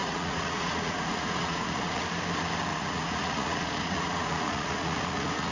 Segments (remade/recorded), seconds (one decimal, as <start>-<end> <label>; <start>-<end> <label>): 0.0-2.0 remade; 2.0-2.7 recorded; 2.7-5.5 remade